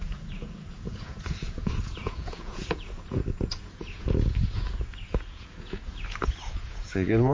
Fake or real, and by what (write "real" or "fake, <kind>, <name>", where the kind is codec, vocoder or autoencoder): fake, vocoder, Vocos